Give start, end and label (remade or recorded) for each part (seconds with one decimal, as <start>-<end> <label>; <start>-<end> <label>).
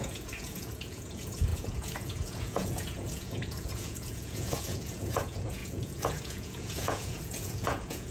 0.0-8.1 remade